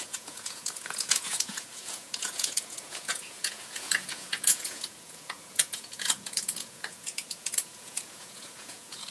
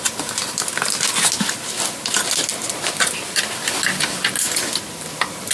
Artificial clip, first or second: first